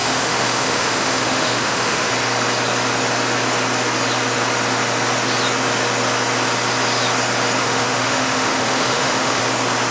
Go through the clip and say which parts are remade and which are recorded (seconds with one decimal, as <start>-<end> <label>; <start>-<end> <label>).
0.0-2.1 remade; 2.1-7.6 recorded; 7.6-9.4 remade; 9.4-9.9 recorded

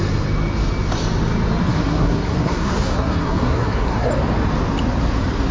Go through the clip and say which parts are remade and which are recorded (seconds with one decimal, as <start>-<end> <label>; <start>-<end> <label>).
0.0-1.7 recorded; 1.7-4.1 remade; 4.1-5.5 recorded

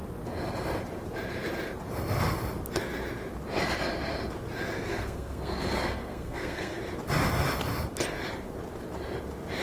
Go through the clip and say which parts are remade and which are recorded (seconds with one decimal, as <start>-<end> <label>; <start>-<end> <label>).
0.0-4.9 recorded; 4.9-6.8 remade; 6.8-9.6 recorded

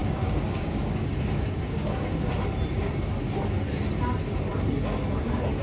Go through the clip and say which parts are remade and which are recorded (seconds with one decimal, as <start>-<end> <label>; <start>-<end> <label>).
0.0-2.3 remade; 2.3-5.6 recorded

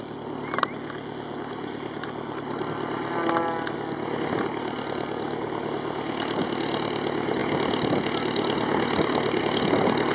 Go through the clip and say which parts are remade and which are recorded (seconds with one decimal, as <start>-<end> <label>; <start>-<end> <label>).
0.0-10.1 recorded